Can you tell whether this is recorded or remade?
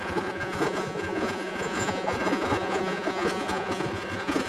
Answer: remade